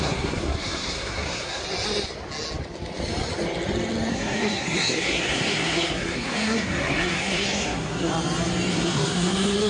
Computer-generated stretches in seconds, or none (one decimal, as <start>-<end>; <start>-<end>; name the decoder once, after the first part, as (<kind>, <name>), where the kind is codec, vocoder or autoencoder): 0.0-1.6 (codec, SNAC); 4.1-8.1; 8.7-9.7